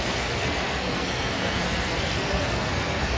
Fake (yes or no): yes